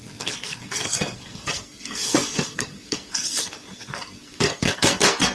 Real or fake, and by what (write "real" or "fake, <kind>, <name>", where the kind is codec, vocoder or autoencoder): fake, codec, SNAC